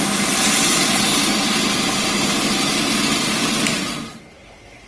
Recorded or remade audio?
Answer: recorded